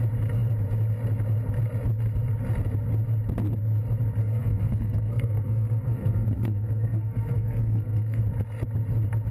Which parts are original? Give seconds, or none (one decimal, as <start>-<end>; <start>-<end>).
0.0-4.2; 8.2-9.3